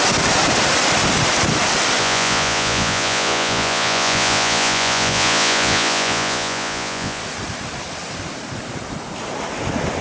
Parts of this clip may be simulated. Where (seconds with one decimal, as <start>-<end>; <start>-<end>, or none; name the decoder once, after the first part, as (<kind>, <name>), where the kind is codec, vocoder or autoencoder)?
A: 2.0-7.2 (vocoder, Vocos)